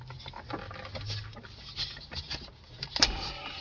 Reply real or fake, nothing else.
real